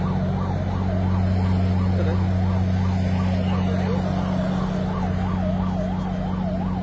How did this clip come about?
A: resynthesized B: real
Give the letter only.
B